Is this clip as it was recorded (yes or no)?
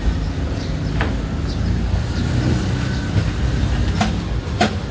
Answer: yes